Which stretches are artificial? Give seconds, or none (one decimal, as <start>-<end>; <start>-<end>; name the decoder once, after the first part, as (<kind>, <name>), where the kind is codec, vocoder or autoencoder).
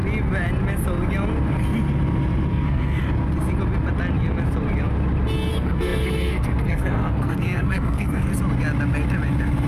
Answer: 2.5-3.0 (codec, SNAC); 5.5-8.3